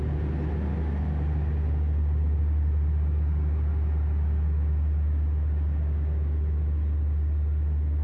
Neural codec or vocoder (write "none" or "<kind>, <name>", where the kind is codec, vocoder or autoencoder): none